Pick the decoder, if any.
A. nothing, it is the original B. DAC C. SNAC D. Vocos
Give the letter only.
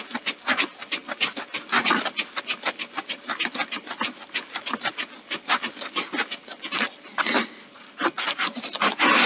A